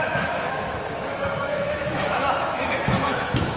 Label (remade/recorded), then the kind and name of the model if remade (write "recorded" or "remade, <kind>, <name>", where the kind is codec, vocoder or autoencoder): remade, autoencoder, DAC-VAE